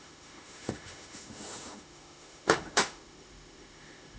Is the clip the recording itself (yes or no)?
no